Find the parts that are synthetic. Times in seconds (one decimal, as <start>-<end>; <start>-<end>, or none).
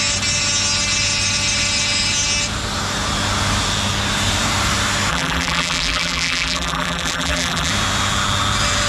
5.1-7.7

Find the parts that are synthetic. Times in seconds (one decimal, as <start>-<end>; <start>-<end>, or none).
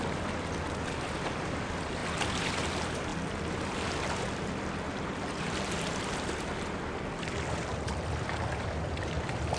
none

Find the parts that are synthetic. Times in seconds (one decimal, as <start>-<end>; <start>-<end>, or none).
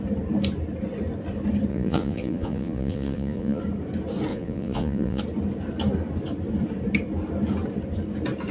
1.7-3.6; 4.3-5.2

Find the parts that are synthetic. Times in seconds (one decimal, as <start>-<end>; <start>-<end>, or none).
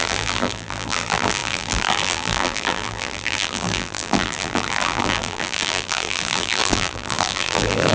0.0-7.9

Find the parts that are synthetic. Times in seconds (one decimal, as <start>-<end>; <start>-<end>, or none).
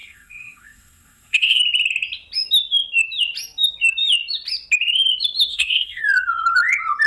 0.0-1.6; 5.5-6.0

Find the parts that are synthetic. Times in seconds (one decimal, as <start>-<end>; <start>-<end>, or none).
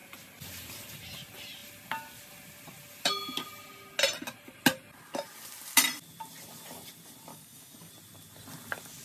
7.3-7.9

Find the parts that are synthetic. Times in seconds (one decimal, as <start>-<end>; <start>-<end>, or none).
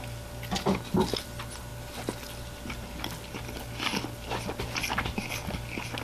none